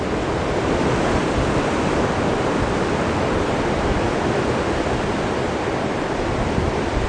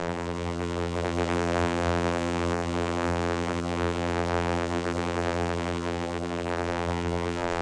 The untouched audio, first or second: first